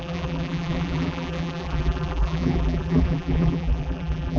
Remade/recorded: remade